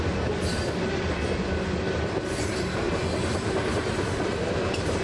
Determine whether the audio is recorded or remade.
recorded